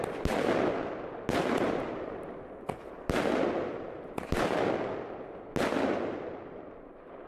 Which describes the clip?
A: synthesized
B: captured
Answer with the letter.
B